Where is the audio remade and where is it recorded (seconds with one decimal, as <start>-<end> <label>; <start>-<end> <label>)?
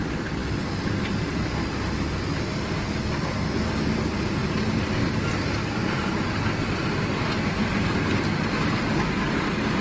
0.0-4.4 recorded; 4.4-5.1 remade; 5.1-5.6 recorded; 5.6-6.3 remade; 6.3-9.8 recorded